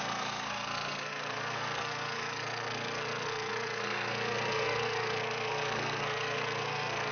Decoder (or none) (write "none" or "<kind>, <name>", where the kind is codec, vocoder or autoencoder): codec, SNAC